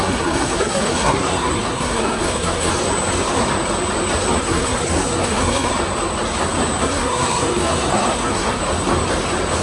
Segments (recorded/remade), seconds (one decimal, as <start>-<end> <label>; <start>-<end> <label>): 0.0-2.7 remade; 2.7-4.4 recorded; 4.4-5.7 remade; 5.7-6.8 recorded; 6.8-8.6 remade; 8.6-9.6 recorded